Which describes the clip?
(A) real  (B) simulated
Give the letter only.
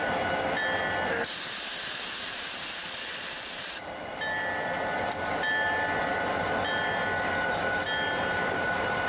A